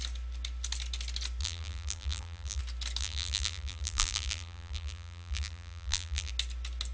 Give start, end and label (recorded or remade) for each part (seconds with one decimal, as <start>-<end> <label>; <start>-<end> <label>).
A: 0.0-1.4 recorded; 1.4-2.6 remade; 2.6-3.0 recorded; 3.0-6.3 remade; 6.3-6.9 recorded